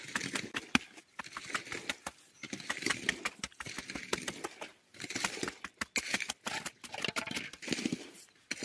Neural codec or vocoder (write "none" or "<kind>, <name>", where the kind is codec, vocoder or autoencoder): none